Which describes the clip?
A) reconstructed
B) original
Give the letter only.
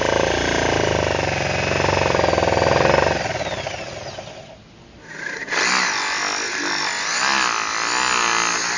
B